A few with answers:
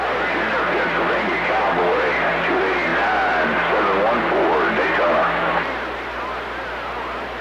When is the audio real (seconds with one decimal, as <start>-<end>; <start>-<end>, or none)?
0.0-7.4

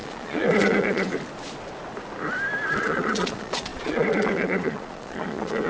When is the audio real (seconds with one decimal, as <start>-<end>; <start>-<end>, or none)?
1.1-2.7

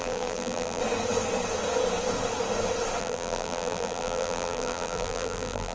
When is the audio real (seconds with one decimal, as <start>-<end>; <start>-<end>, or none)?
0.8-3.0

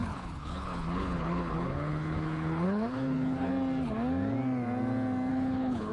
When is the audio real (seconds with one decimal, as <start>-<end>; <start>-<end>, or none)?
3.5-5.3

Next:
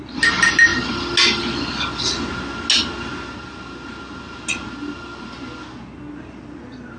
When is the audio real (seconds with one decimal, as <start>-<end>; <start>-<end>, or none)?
0.0-7.0